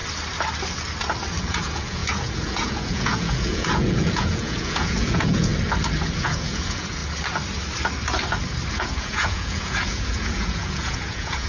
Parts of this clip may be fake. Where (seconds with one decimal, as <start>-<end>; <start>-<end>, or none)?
1.4-5.5; 6.2-7.0; 8.7-11.5